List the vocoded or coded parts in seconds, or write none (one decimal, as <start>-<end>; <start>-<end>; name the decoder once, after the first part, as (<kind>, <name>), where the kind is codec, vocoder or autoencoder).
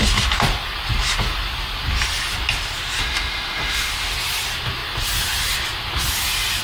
3.0-3.9 (autoencoder, DAC-VAE)